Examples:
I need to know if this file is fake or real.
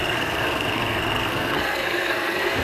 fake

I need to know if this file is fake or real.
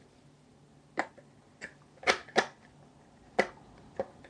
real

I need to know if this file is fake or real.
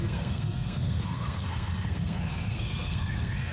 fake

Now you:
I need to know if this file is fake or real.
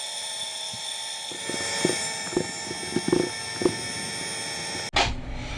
real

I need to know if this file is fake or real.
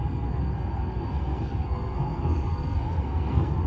fake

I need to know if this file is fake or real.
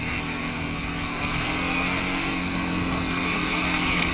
fake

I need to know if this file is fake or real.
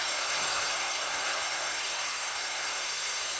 fake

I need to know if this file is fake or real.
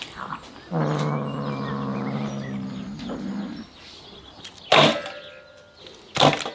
real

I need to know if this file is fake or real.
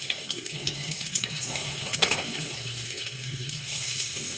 fake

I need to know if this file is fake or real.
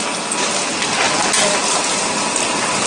real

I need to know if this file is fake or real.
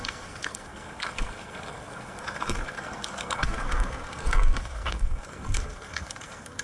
fake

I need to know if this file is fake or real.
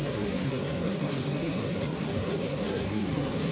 fake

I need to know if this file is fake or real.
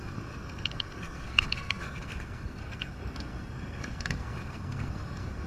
fake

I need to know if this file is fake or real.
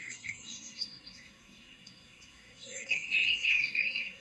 fake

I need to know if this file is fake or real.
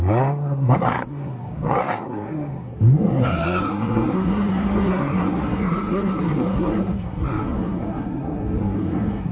fake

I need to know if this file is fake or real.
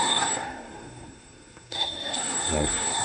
fake